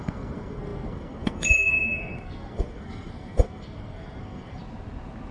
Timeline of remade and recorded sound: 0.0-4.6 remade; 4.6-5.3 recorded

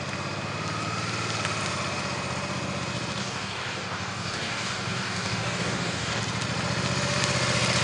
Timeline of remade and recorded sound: 0.0-3.2 recorded; 3.2-6.2 remade; 6.2-7.8 recorded

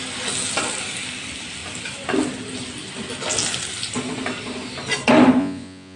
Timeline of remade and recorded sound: 0.0-5.4 recorded; 5.4-6.0 remade

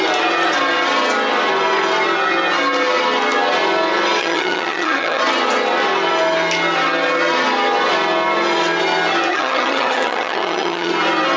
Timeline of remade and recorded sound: 0.0-4.2 recorded; 4.2-5.2 remade; 5.2-9.3 recorded; 9.3-10.9 remade; 10.9-11.4 recorded